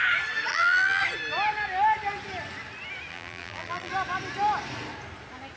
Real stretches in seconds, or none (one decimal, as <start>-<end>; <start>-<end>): 0.0-0.5; 1.0-3.1; 3.9-5.6